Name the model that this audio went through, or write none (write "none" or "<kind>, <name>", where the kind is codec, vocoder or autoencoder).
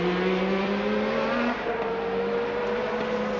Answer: vocoder, BigVGAN v2